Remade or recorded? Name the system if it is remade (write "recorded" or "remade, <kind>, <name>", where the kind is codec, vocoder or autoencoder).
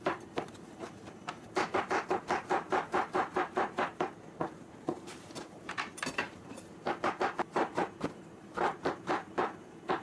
remade, vocoder, BigVGAN v2